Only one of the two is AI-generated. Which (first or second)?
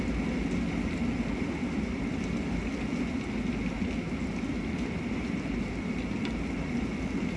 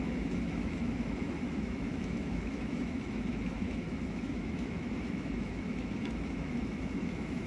second